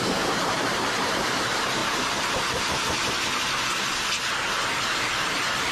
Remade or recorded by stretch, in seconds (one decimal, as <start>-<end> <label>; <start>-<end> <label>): 0.0-1.8 remade; 1.8-5.2 recorded; 5.2-5.7 remade